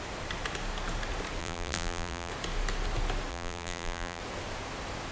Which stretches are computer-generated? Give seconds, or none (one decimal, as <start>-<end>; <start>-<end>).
1.4-2.3; 3.3-4.2